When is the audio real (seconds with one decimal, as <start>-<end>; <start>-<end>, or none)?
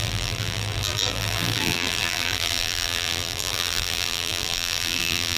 none